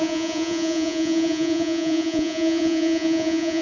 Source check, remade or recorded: remade